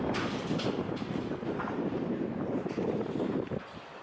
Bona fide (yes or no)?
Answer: no